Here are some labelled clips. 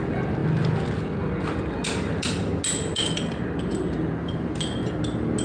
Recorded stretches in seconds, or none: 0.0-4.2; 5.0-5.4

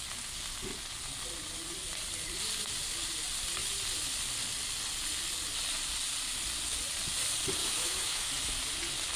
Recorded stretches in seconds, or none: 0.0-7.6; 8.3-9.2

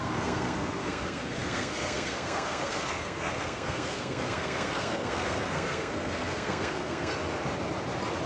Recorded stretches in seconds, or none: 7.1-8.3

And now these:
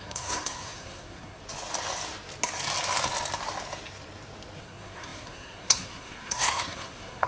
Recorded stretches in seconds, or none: 1.4-4.6

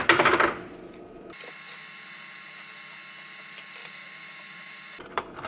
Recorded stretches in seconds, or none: 0.0-3.8